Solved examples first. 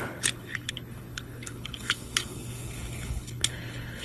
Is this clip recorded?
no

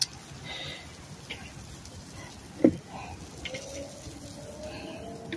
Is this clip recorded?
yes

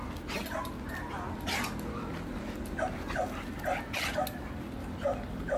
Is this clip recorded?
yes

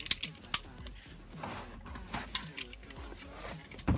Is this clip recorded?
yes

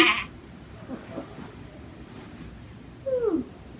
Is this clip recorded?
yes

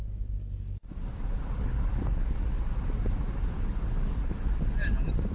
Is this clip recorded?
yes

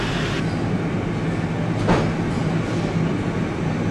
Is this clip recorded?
yes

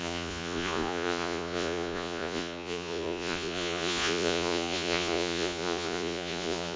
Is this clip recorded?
no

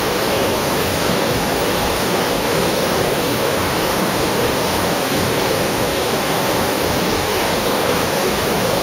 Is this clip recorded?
no